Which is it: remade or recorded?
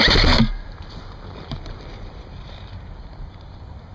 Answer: remade